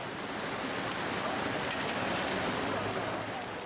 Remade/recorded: recorded